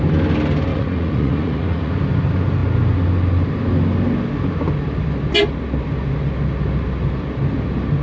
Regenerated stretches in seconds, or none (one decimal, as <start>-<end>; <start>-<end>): 0.7-1.9